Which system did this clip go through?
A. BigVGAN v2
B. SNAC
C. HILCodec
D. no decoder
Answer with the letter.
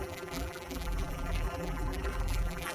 A